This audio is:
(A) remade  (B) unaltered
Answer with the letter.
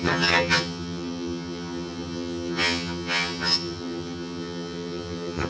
A